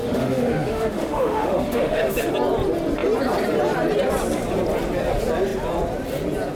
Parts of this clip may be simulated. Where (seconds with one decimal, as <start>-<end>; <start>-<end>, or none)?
0.0-2.3